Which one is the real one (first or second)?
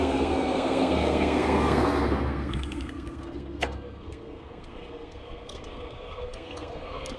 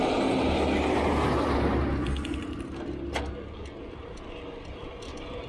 second